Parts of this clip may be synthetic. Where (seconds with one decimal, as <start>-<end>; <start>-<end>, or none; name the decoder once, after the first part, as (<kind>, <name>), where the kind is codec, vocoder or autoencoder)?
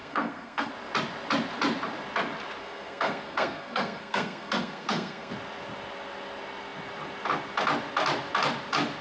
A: 0.0-0.7 (codec, SNAC); 2.6-5.3